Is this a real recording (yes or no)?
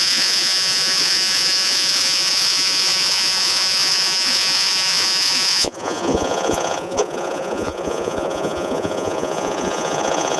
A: no